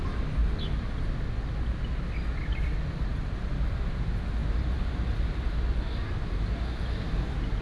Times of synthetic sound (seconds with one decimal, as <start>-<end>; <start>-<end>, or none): none